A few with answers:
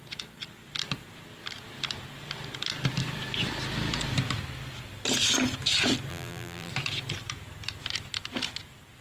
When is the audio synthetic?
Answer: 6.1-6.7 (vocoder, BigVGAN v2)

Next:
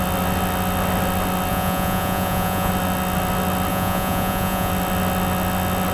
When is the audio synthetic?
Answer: 1.5-2.7 (vocoder, Vocos); 3.7-4.7

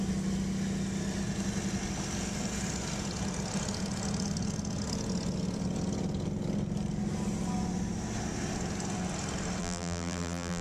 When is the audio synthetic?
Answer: 9.6-10.6 (vocoder, BigVGAN v2)

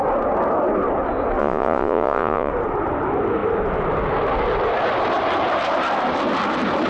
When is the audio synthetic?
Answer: 1.4-2.5 (vocoder, Vocos)